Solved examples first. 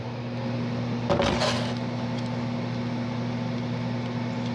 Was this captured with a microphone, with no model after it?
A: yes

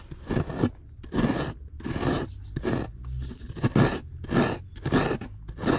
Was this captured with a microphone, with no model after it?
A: yes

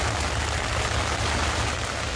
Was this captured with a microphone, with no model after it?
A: yes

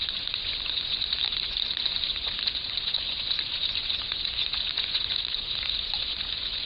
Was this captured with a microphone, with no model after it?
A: no